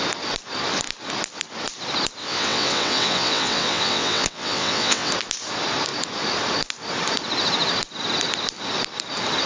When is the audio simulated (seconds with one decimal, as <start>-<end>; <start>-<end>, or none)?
2.2-5.1